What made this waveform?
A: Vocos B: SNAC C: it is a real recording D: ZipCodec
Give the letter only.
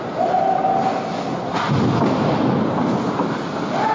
C